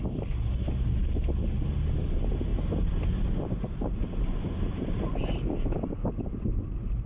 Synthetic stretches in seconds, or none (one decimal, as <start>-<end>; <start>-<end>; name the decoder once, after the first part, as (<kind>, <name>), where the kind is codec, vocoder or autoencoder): none